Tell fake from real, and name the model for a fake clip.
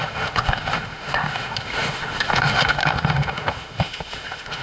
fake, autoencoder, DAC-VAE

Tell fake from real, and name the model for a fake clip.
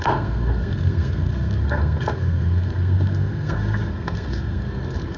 fake, codec, SNAC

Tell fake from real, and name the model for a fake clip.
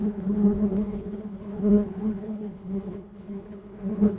fake, codec, HILCodec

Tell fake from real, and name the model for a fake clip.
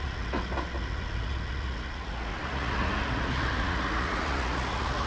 fake, vocoder, Vocos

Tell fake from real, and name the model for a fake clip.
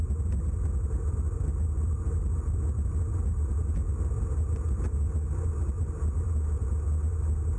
real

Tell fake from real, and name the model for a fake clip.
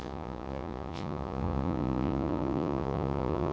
fake, vocoder, Vocos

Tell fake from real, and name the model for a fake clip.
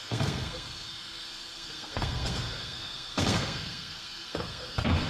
fake, codec, SNAC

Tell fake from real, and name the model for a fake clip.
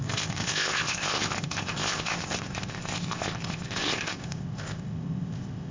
fake, codec, ZipCodec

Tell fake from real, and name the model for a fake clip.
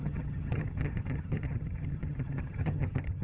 fake, vocoder, HiFi-GAN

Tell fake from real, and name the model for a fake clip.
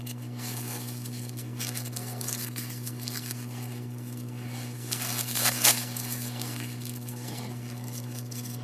fake, codec, SNAC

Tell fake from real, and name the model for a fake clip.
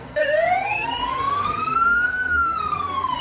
fake, codec, SNAC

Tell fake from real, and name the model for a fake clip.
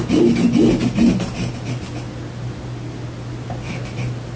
real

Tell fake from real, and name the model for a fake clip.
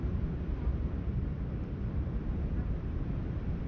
fake, vocoder, BigVGAN v2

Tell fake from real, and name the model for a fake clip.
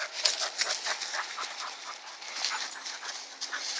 fake, vocoder, BigVGAN v2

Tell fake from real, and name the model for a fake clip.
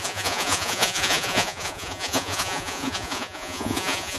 fake, vocoder, Vocos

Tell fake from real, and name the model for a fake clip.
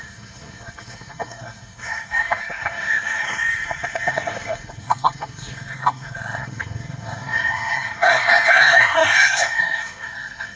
fake, codec, SNAC